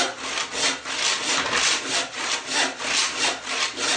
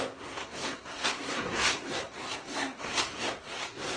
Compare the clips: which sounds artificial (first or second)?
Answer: second